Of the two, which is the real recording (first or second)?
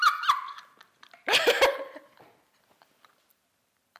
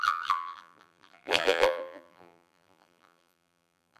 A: first